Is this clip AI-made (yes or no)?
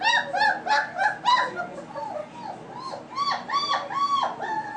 no